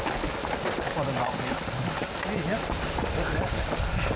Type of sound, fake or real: real